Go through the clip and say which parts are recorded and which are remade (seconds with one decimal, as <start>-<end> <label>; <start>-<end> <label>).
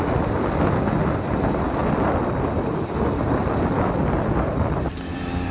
0.0-5.5 recorded